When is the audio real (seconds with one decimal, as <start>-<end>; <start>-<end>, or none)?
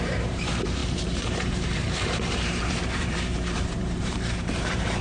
none